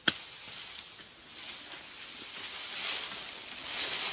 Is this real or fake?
real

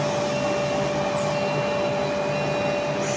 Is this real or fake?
real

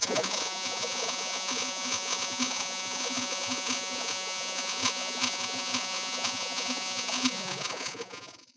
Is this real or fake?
fake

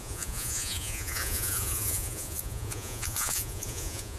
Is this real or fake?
fake